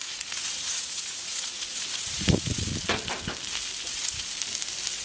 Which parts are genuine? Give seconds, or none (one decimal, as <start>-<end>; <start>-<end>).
2.7-3.9; 4.3-5.0